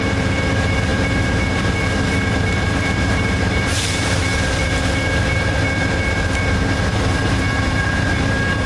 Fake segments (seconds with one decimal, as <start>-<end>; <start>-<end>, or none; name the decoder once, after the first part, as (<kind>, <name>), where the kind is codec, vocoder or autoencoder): 0.0-8.7 (vocoder, BigVGAN v2)